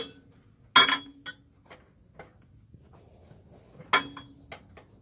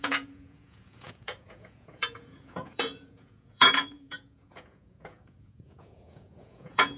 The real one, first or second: first